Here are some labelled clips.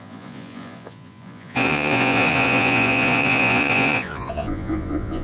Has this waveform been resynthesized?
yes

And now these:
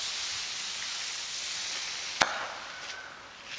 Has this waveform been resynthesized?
no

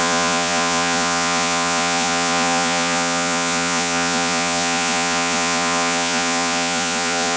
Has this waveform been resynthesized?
yes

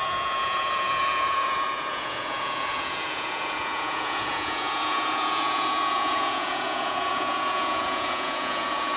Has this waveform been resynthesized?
yes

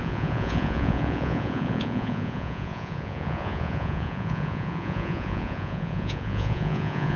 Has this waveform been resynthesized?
yes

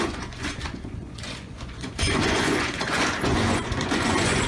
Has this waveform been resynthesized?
yes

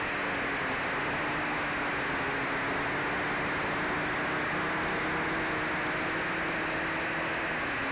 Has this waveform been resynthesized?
no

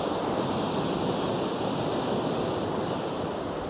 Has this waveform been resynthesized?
no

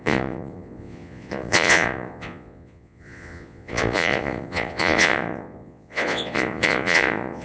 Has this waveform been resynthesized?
yes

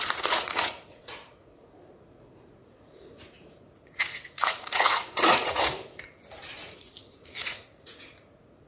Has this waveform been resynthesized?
yes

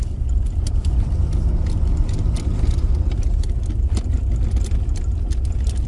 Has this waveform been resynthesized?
no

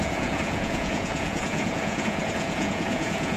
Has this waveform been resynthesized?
yes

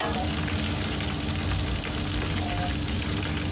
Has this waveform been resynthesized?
no